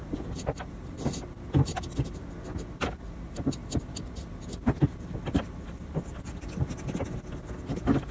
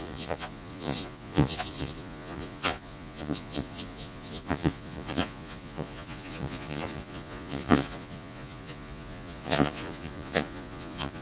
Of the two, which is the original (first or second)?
first